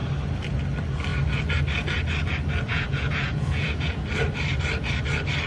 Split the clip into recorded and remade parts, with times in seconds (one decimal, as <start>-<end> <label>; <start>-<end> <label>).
0.0-2.7 recorded; 2.7-4.0 remade; 4.0-5.5 recorded